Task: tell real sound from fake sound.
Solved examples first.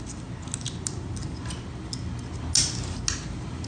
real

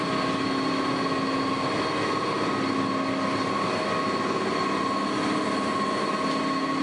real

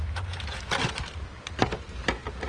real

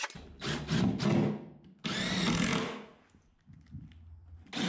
real